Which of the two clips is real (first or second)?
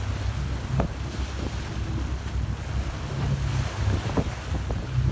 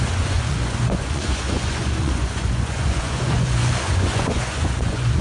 first